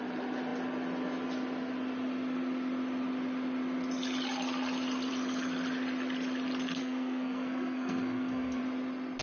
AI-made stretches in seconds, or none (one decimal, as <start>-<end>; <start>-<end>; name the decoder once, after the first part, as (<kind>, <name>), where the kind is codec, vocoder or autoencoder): 6.8-8.6 (codec, SNAC)